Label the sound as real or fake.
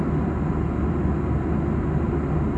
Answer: real